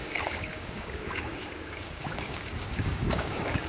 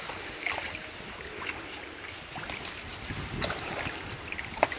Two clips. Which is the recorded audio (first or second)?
second